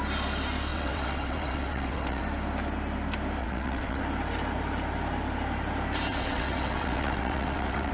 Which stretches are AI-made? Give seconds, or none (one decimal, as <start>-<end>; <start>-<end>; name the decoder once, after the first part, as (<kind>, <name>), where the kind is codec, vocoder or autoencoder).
0.7-2.2 (vocoder, WaveNeXt); 3.4-4.0; 6.1-7.9